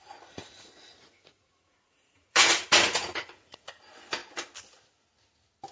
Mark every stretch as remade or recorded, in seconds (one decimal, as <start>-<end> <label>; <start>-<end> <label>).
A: 0.0-0.4 recorded; 0.4-3.8 remade; 3.8-5.7 recorded